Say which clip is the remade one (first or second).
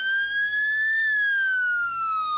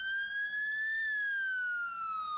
first